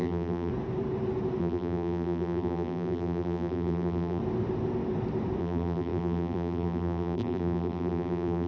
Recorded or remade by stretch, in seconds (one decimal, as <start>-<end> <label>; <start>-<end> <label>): 0.0-0.5 remade; 0.5-1.4 recorded; 1.4-4.2 remade; 4.2-5.4 recorded; 5.4-8.5 remade